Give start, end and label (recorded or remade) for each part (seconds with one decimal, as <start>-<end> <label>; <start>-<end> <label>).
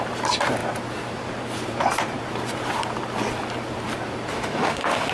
0.0-4.3 recorded; 4.3-5.1 remade